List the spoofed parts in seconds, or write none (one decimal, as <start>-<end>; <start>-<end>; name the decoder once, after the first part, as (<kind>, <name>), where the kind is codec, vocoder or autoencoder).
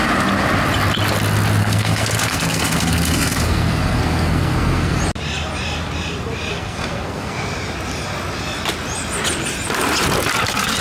1.6-5.0 (codec, SNAC); 6.5-7.5